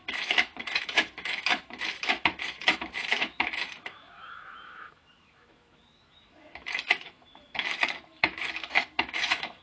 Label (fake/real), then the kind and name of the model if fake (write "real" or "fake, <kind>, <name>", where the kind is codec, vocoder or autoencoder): fake, autoencoder, DAC-VAE